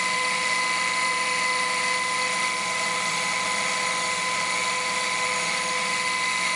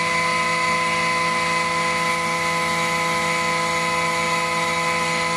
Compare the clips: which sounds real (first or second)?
second